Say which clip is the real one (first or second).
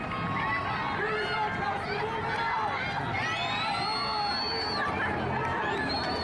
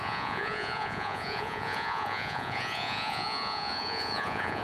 first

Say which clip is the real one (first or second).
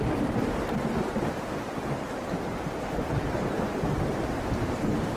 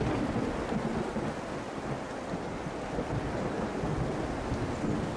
second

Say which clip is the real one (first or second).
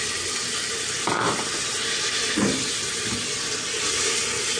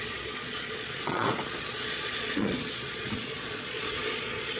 first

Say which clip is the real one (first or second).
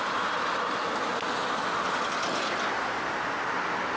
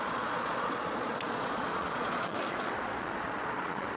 first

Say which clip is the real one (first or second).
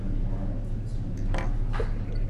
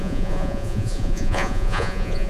first